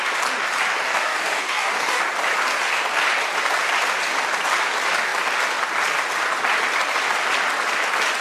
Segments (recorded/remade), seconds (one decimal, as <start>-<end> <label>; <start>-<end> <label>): 0.0-0.9 recorded; 0.9-2.0 remade; 2.0-8.2 recorded